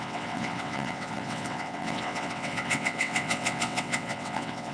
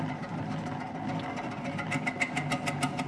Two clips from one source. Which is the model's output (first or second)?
first